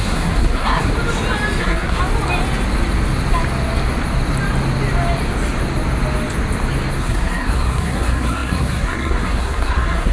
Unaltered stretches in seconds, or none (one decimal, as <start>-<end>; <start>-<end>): 0.9-1.6; 2.0-7.0